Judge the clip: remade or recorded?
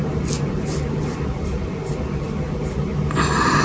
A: recorded